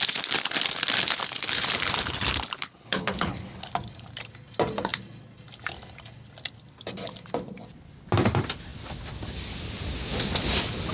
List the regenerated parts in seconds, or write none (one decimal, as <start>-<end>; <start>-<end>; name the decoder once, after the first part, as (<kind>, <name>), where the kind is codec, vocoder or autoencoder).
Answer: 2.6-3.7 (codec, HILCodec)